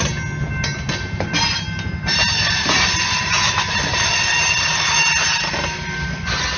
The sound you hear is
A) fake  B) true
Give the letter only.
B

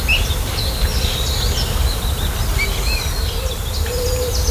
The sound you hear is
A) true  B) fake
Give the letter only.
A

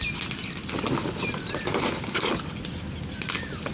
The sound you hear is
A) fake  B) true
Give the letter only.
B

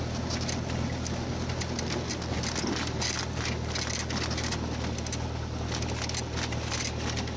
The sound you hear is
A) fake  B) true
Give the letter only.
B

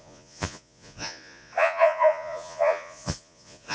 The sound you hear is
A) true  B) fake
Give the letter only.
B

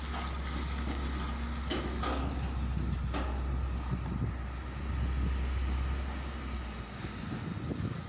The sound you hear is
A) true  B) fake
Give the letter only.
A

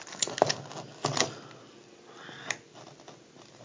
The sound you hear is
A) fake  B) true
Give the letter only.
B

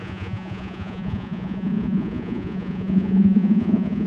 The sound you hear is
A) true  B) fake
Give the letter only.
B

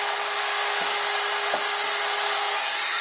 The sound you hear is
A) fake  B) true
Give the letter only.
B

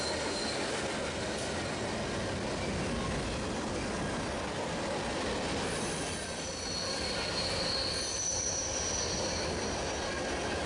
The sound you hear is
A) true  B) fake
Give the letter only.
A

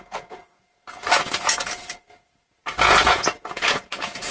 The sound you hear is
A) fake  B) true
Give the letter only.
A